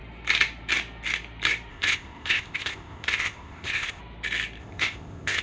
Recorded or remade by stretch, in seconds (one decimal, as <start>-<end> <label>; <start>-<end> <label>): 0.0-1.7 recorded; 1.7-4.0 remade; 4.0-4.6 recorded; 4.6-5.4 remade